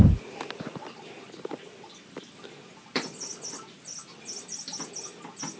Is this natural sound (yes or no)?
yes